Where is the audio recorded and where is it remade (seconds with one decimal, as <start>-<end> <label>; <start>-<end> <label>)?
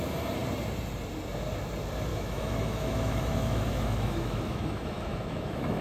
0.0-2.1 recorded; 2.1-5.8 remade